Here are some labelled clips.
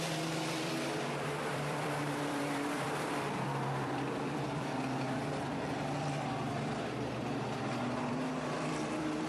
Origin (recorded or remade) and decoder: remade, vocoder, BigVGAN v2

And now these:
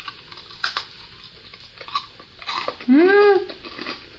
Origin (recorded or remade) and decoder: recorded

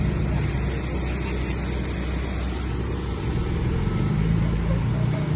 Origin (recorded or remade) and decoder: recorded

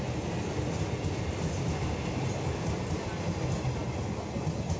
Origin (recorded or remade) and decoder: recorded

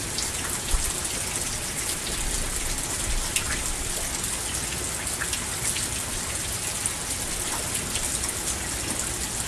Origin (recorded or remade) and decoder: recorded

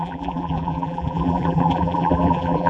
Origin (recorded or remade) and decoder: remade, vocoder, BigVGAN v2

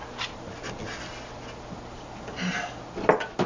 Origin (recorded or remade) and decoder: recorded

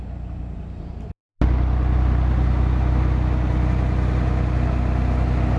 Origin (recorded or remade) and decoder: recorded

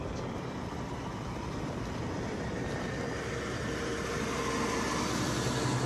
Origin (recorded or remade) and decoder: recorded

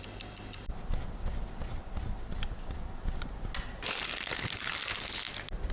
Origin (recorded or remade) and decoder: recorded